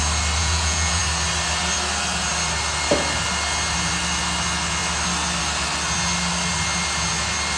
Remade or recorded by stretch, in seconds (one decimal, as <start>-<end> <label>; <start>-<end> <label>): 0.0-0.4 recorded; 0.4-1.0 remade; 1.0-7.6 recorded